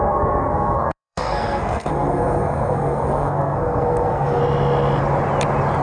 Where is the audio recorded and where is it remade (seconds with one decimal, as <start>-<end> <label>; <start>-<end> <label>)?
0.0-4.4 remade; 4.4-5.8 recorded